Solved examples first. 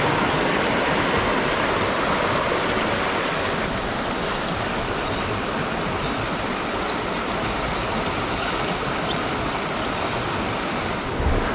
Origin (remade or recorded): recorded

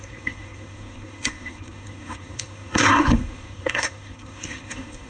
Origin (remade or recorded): remade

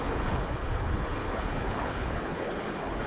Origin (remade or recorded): remade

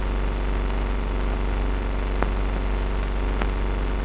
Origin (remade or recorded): recorded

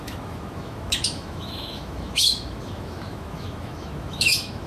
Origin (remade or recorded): remade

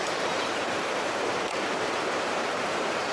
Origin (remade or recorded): remade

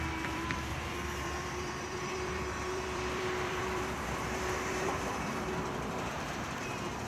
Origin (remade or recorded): remade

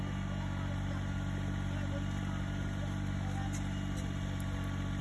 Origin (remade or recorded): recorded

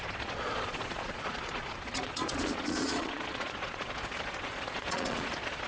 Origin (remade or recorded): remade